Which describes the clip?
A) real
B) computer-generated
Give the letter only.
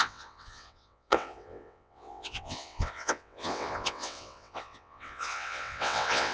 B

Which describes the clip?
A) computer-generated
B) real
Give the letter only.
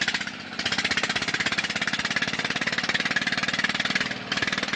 B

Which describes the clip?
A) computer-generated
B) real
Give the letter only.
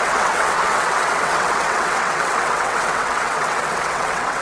A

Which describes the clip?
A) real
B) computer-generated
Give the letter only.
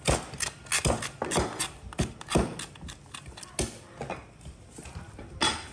A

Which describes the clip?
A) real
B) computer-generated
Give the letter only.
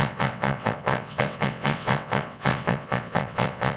B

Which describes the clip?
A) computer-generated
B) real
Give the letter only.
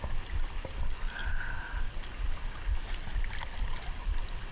B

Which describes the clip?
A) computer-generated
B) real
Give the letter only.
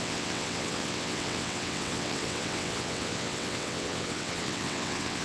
A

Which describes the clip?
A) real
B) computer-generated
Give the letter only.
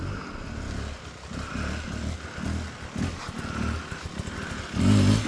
A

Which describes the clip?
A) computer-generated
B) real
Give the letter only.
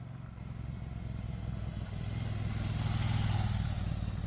B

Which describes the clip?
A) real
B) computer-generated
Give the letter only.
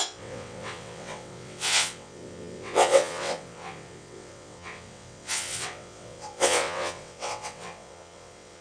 B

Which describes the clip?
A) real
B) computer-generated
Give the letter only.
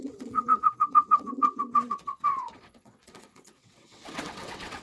B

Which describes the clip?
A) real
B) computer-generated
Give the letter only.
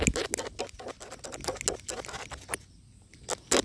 A